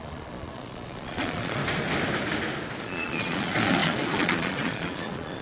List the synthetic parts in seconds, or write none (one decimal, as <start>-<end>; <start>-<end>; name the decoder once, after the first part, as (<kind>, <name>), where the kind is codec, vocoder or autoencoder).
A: 0.0-1.6 (vocoder, Vocos); 2.8-5.4